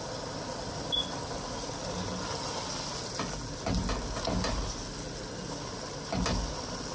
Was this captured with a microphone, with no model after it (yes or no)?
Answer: yes